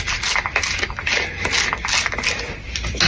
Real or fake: real